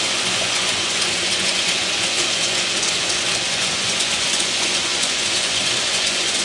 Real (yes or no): no